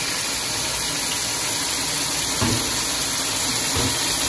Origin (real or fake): real